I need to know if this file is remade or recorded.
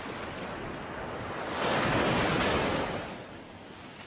recorded